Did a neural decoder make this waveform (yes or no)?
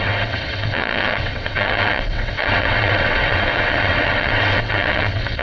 yes